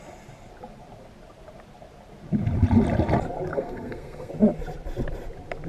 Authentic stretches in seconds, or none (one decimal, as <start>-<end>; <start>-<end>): 0.0-3.5; 4.3-5.7